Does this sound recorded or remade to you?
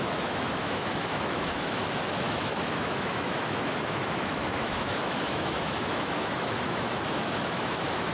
remade